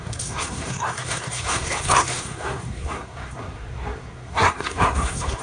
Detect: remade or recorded remade